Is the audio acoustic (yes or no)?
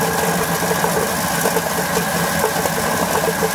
yes